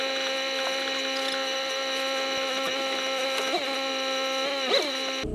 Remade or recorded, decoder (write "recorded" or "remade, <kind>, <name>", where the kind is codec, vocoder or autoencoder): recorded